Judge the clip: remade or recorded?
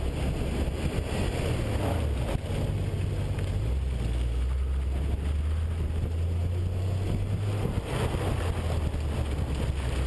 recorded